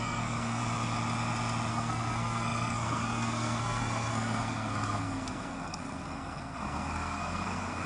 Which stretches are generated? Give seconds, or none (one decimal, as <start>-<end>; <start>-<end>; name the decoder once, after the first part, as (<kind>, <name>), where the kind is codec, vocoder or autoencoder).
0.0-0.6 (codec, SNAC); 1.7-7.9